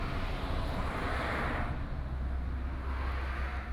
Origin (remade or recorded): recorded